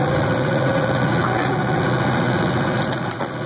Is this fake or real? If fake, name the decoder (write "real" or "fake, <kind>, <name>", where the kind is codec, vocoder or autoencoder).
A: fake, vocoder, Vocos